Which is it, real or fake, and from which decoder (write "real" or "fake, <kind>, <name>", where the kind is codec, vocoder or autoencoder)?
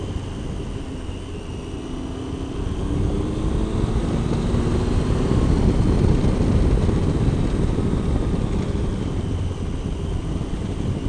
real